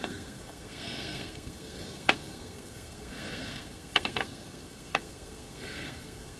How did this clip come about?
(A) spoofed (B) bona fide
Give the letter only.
A